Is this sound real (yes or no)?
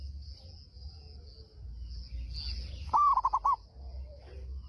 yes